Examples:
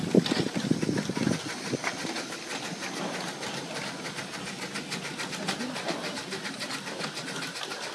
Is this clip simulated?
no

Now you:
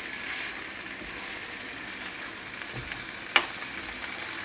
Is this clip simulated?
no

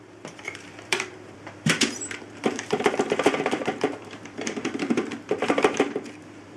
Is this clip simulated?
yes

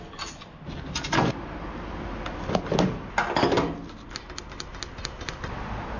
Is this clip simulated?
no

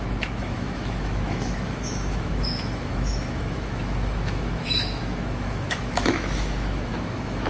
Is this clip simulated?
yes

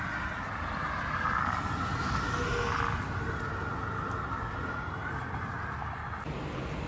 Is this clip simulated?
no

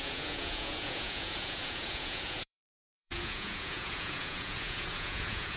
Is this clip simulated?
yes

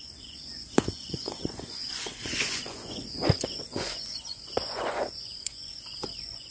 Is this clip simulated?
yes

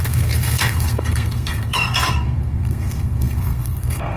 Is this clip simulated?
yes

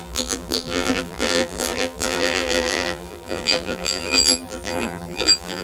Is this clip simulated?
yes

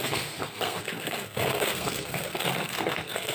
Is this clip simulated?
yes